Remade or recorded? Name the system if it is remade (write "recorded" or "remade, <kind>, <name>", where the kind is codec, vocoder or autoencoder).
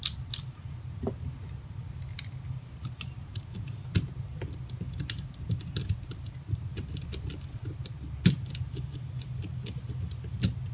recorded